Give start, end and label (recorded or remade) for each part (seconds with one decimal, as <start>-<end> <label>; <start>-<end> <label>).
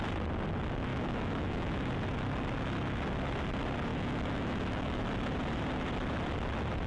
0.0-0.9 recorded; 0.9-1.9 remade; 1.9-3.9 recorded; 3.9-5.0 remade; 5.0-6.9 recorded